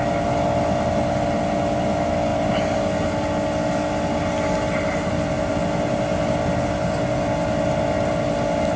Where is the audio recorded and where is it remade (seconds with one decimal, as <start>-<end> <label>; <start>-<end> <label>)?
0.0-8.8 recorded